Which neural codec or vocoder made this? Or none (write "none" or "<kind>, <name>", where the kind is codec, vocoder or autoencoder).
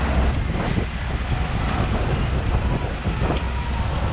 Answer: none